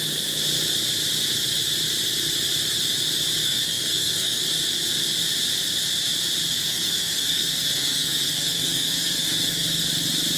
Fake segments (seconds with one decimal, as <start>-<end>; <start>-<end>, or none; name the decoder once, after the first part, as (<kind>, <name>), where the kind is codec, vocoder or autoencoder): 3.4-4.4 (codec, SNAC); 6.5-9.8